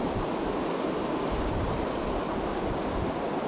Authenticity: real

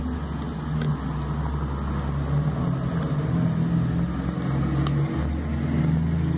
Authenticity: real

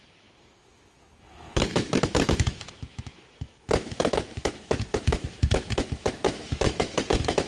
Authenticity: fake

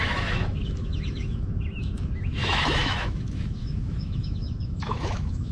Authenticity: fake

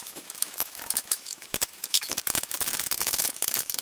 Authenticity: fake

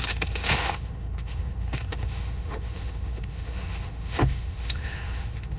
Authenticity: fake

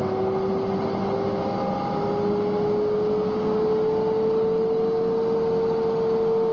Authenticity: real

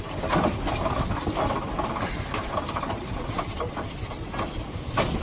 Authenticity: real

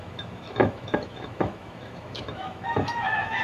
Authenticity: fake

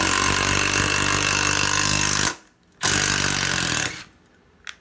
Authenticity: real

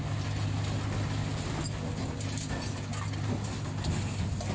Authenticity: real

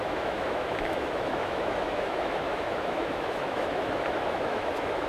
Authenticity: fake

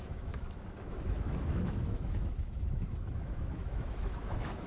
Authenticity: fake